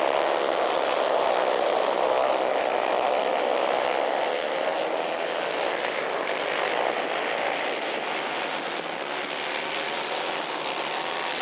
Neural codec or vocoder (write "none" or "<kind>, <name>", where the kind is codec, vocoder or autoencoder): none